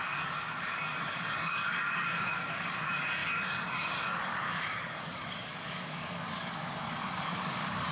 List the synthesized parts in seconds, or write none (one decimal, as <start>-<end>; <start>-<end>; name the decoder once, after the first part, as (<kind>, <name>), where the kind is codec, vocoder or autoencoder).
0.0-7.9 (codec, DAC)